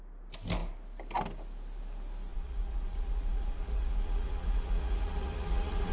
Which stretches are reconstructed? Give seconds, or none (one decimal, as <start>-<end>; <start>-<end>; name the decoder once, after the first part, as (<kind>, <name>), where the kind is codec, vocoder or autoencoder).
2.3-5.9 (vocoder, Vocos)